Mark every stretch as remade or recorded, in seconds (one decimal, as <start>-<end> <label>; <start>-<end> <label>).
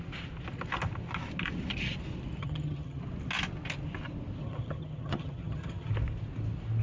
0.0-2.4 recorded; 2.4-3.0 remade; 3.0-4.4 recorded; 4.4-5.9 remade; 5.9-6.8 recorded